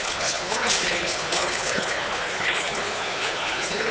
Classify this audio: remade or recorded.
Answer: remade